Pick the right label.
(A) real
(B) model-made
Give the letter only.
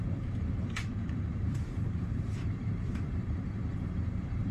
B